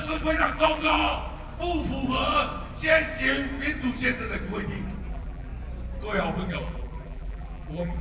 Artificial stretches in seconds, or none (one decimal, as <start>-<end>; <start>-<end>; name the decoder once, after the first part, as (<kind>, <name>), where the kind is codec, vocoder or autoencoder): 0.0-1.0 (vocoder, BigVGAN v2); 5.1-5.5; 6.5-8.0